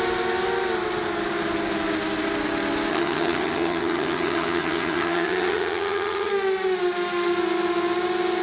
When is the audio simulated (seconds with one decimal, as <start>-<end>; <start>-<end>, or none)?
2.9-6.3